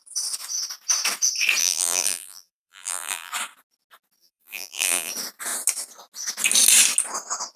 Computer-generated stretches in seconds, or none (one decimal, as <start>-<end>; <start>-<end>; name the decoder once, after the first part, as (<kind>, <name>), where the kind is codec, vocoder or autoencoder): 1.6-3.3 (vocoder, BigVGAN v2); 4.2-5.1